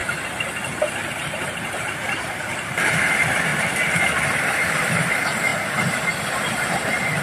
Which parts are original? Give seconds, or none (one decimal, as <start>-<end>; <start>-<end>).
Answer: 0.0-1.4; 3.5-4.5; 5.5-6.2